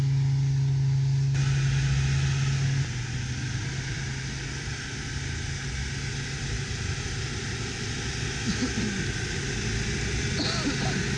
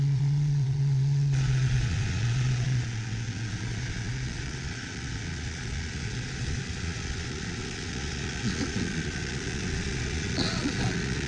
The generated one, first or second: second